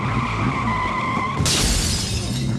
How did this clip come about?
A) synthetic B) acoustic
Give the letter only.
B